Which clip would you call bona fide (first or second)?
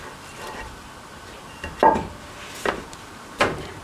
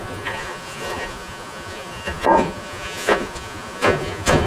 first